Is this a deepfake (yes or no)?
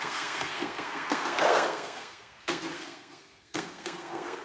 yes